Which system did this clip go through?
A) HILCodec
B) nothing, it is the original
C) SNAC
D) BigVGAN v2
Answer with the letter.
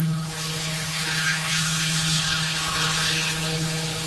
A